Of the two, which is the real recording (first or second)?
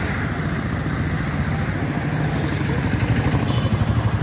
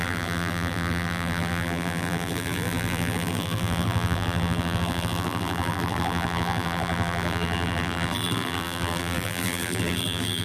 first